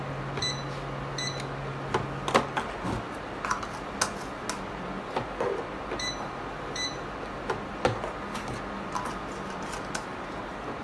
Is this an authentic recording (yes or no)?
yes